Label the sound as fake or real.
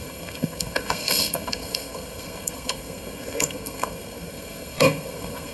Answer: fake